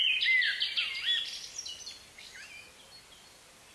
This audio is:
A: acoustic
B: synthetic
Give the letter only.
A